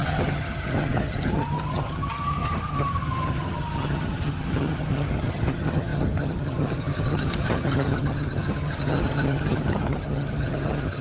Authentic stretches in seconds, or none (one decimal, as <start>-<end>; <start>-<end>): none